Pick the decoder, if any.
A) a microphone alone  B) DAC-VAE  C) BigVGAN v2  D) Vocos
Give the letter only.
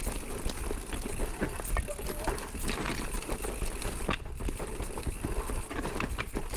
A